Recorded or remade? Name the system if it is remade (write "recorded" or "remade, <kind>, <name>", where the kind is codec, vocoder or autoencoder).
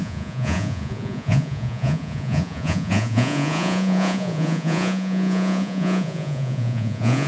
remade, vocoder, Vocos